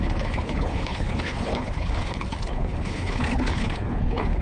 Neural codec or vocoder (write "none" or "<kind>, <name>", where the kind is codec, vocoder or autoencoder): codec, HILCodec